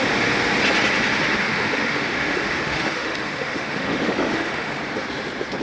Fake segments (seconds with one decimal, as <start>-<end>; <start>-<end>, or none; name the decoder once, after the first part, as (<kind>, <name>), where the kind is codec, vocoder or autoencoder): 1.4-4.8 (autoencoder, DAC-VAE)